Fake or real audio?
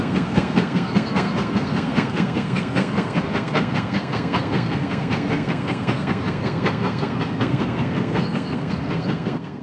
fake